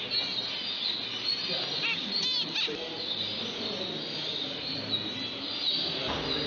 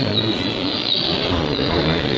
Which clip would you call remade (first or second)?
second